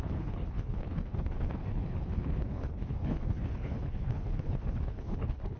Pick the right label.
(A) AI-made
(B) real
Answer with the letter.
A